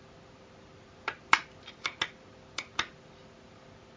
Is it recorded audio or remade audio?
recorded